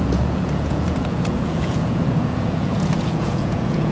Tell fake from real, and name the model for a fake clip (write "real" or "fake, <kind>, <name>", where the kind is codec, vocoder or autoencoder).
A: fake, vocoder, Vocos